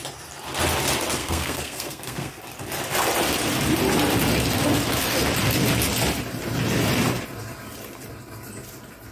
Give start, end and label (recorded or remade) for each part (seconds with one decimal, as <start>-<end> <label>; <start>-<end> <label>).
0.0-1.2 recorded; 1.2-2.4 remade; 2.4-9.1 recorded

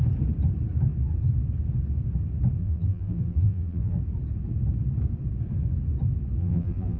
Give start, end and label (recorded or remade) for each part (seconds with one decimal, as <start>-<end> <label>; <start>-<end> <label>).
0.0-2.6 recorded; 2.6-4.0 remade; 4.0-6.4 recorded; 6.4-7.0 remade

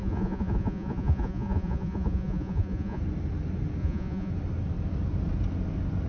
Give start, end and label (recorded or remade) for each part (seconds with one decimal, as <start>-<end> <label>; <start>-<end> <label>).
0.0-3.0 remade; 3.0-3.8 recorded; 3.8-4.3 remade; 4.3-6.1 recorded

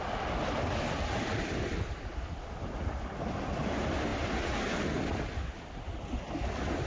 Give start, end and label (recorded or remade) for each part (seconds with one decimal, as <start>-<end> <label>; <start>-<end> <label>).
0.0-6.9 recorded

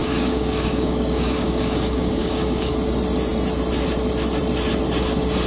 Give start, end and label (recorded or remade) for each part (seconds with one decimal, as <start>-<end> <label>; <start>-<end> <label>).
0.0-2.7 remade; 2.7-5.5 recorded

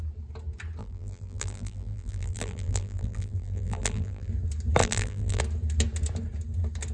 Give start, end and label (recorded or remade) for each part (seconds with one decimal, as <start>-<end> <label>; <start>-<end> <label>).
0.0-0.8 recorded; 0.8-4.3 remade; 4.3-4.8 recorded; 4.8-5.4 remade; 5.4-6.9 recorded